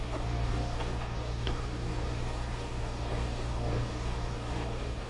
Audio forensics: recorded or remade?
remade